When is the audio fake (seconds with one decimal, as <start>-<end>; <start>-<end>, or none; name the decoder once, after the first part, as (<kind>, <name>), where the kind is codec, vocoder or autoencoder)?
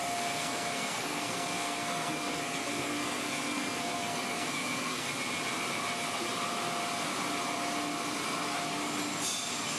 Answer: 0.0-5.1 (codec, SNAC)